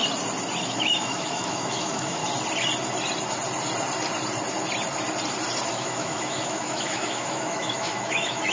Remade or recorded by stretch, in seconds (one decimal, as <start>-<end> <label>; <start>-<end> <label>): 0.0-0.6 recorded; 0.6-2.2 remade; 2.2-5.7 recorded; 5.7-8.5 remade